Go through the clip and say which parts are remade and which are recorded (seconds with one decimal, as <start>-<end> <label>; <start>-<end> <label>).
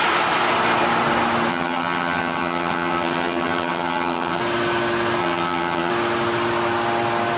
0.0-1.5 recorded; 1.5-4.4 remade; 4.4-5.2 recorded; 5.2-5.9 remade; 5.9-7.4 recorded